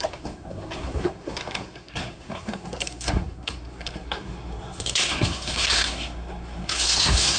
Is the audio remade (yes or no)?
yes